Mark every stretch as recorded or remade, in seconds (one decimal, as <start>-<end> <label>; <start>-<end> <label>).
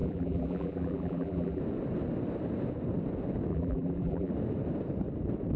0.0-1.6 remade; 1.6-3.5 recorded; 3.5-4.3 remade; 4.3-5.6 recorded